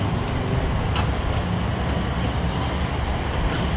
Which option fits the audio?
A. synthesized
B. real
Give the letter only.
B